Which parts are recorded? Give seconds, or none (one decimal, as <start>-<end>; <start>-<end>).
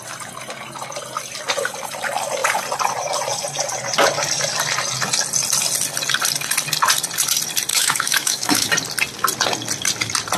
0.0-7.7; 8.7-10.4